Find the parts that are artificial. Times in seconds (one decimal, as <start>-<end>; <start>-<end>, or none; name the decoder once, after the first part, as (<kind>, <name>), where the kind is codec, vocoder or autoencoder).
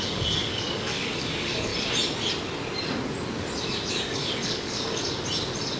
0.0-1.7 (codec, DAC); 3.9-5.0